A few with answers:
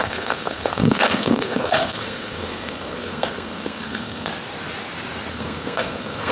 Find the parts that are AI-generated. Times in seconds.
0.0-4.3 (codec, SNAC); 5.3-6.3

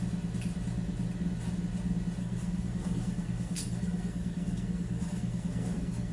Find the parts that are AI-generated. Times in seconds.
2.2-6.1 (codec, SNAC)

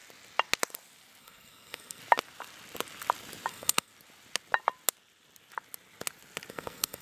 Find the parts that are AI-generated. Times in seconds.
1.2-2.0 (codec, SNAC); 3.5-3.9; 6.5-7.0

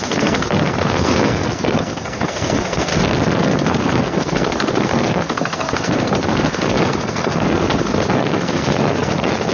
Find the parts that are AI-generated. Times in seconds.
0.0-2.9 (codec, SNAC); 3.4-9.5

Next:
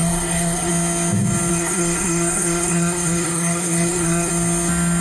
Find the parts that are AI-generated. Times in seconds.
0.0-0.7 (codec, SNAC); 1.5-4.3

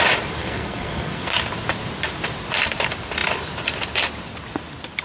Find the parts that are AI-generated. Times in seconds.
0.4-1.3 (codec, SNAC)

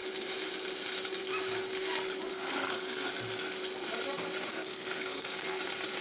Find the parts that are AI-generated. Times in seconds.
2.3-3.1 (codec, SNAC); 4.5-5.6

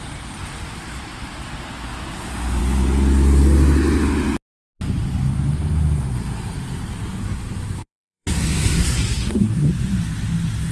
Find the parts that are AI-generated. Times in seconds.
7.2-9.7 (codec, SNAC)